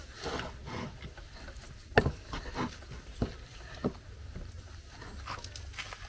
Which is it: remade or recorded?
recorded